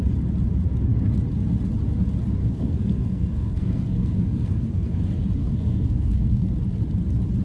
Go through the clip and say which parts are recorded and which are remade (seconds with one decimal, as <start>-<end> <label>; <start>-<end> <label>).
0.0-2.4 recorded; 2.4-5.0 remade; 5.0-5.4 recorded; 5.4-6.5 remade; 6.5-7.4 recorded